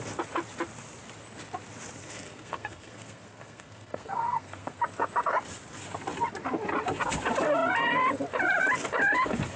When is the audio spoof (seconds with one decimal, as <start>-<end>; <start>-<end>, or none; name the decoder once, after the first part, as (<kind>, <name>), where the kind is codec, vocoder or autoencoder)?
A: 2.0-4.8 (codec, SNAC)